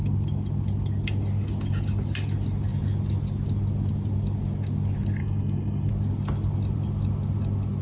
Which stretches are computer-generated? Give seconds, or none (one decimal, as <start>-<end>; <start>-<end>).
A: 5.2-5.9